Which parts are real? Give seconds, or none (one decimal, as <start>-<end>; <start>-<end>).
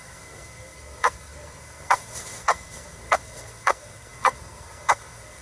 none